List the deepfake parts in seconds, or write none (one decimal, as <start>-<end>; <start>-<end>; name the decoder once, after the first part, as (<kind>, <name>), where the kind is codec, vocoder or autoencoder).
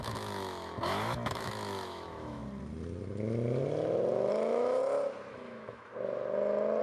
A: 0.0-2.4 (autoencoder, DAC-VAE); 4.3-4.8; 5.3-5.9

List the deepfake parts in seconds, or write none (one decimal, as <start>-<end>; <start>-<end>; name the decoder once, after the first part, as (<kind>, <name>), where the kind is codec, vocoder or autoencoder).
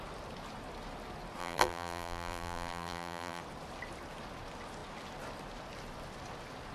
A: 1.4-3.4 (vocoder, BigVGAN v2)